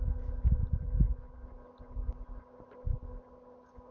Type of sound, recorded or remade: recorded